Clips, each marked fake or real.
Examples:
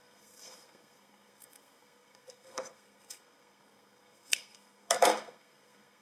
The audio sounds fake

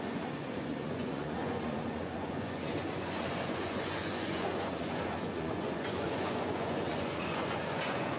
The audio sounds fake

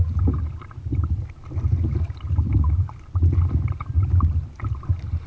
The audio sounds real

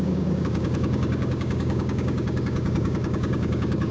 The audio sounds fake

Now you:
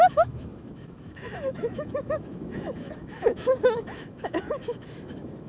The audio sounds fake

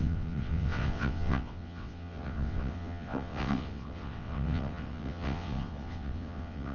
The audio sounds fake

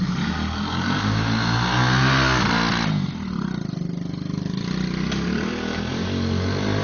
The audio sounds real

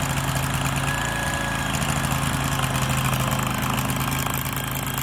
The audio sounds real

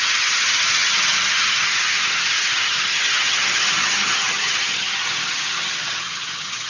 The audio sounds fake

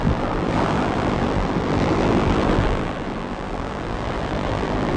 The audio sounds fake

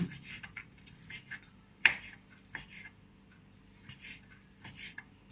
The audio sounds fake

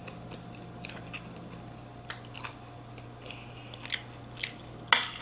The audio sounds real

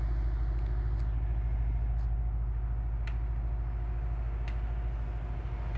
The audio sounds real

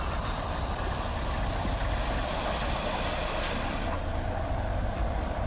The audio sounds fake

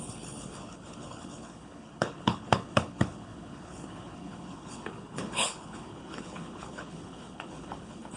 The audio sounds fake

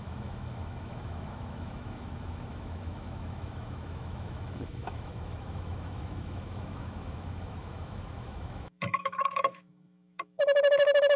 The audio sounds fake